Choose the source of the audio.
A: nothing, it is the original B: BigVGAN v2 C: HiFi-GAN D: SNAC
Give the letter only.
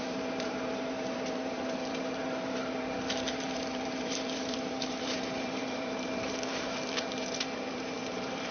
B